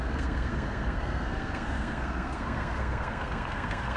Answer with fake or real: fake